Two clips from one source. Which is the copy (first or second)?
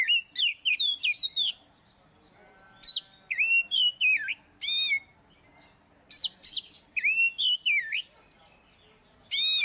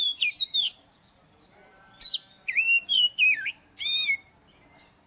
second